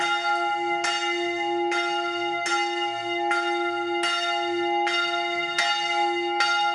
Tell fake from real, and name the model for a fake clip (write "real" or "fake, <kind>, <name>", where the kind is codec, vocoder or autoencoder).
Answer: real